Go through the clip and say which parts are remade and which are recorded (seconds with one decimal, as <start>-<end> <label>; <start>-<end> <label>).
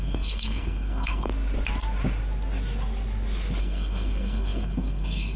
0.0-1.3 remade; 1.3-3.6 recorded; 3.6-5.4 remade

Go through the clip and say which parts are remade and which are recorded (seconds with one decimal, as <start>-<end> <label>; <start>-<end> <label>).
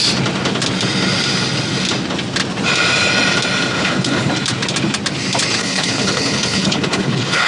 0.0-3.7 recorded; 3.7-4.3 remade; 4.3-5.6 recorded; 5.6-7.5 remade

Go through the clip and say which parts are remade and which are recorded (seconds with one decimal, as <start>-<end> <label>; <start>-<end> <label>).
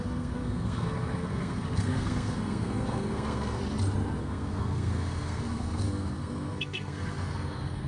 0.0-3.6 remade; 3.6-4.2 recorded; 4.2-7.9 remade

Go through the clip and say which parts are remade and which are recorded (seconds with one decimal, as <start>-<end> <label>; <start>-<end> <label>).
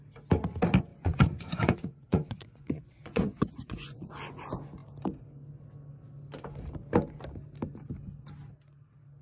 0.0-0.9 recorded; 0.9-4.1 remade; 4.1-9.2 recorded